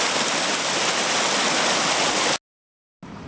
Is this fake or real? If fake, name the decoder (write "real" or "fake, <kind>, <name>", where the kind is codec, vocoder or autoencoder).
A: real